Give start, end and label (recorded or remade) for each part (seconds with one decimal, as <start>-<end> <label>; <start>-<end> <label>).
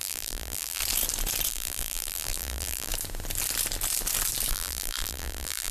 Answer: 0.0-0.8 remade; 0.8-1.5 recorded; 1.5-2.9 remade; 2.9-4.5 recorded; 4.5-5.7 remade